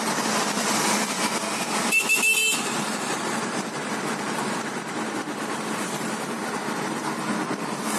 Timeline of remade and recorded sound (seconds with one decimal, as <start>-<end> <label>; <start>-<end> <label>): 0.0-2.4 recorded; 2.4-3.4 remade; 3.4-8.0 recorded